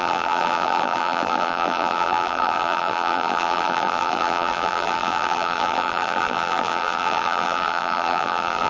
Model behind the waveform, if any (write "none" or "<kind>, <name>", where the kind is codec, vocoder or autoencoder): vocoder, BigVGAN v2